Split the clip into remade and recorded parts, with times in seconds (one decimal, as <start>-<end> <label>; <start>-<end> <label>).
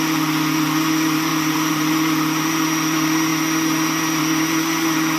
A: 0.0-1.3 recorded; 1.3-1.9 remade; 1.9-5.2 recorded